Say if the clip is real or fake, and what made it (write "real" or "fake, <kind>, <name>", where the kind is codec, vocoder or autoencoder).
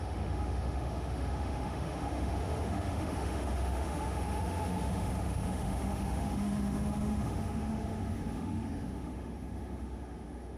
fake, autoencoder, DAC-VAE